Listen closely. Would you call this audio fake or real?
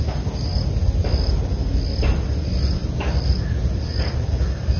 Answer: real